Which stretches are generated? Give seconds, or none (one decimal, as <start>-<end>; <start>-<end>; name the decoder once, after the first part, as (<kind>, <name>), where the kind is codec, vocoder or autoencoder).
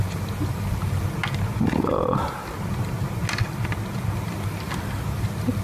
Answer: none